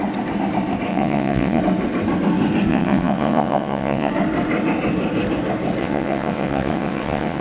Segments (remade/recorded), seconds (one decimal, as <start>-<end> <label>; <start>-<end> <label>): 0.0-0.9 recorded; 0.9-1.6 remade; 1.6-2.7 recorded; 2.7-4.1 remade; 4.1-5.8 recorded; 5.8-7.4 remade